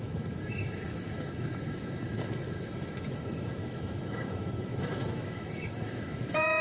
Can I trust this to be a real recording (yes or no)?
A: no